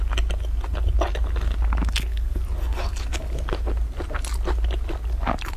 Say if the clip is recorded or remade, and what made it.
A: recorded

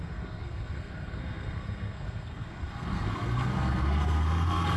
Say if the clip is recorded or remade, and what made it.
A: remade, codec, SNAC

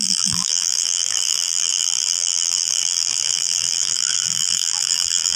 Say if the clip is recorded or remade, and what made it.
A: remade, vocoder, BigVGAN v2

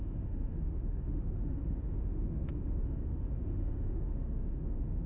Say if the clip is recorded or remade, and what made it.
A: remade, autoencoder, DAC-VAE